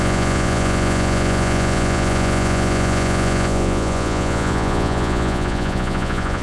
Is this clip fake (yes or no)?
yes